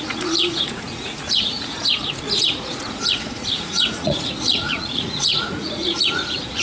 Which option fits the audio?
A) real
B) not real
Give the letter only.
B